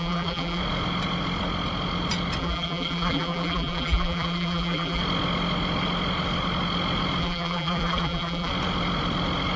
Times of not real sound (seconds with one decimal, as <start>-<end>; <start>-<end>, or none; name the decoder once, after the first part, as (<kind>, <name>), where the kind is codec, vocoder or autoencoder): 0.0-0.6 (vocoder, BigVGAN v2); 2.4-5.0; 7.2-8.5